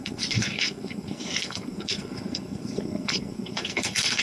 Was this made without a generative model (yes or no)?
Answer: no